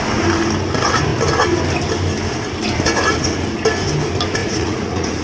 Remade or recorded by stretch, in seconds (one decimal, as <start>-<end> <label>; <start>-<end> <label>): 0.0-4.4 recorded; 4.4-5.2 remade